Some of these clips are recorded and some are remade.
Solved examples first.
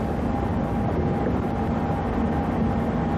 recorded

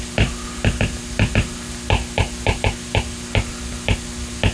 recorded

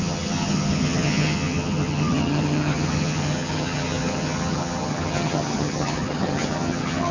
remade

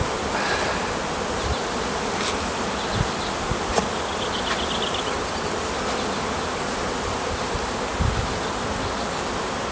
recorded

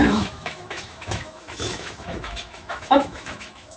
remade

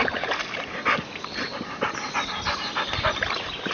recorded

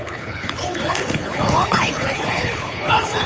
remade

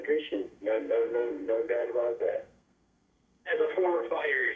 remade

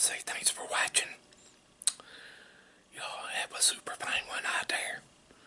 recorded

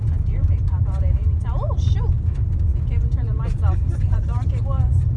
recorded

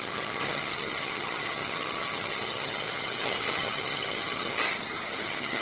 remade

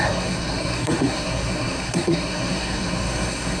remade